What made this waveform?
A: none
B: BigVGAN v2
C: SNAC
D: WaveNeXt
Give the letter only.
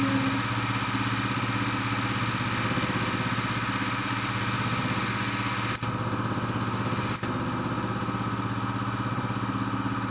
A